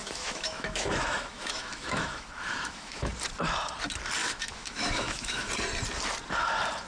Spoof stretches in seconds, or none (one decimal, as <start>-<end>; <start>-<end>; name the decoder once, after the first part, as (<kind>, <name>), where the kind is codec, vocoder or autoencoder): 0.0-3.1 (autoencoder, DAC-VAE); 4.2-5.5